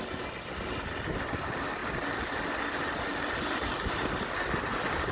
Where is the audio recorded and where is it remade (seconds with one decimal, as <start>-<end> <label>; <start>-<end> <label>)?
0.0-5.1 recorded

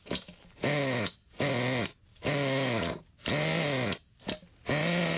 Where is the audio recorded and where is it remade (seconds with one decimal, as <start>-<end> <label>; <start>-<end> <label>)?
0.0-1.5 remade; 1.5-2.1 recorded; 2.1-3.0 remade; 3.0-5.2 recorded